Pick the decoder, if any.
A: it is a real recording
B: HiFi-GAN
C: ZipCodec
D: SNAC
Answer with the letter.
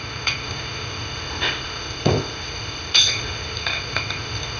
C